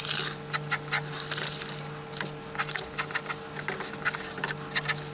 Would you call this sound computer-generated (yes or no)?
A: no